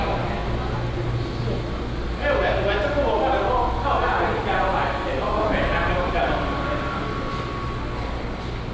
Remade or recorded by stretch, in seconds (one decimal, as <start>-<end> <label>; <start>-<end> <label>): 0.0-8.7 recorded